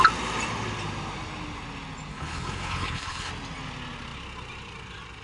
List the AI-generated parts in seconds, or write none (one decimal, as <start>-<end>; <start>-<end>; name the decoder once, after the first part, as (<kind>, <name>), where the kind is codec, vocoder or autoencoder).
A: 2.1-3.3 (codec, HILCodec)